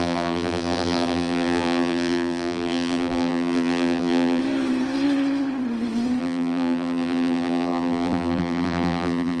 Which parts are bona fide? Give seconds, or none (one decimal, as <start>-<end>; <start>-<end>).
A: 4.4-6.2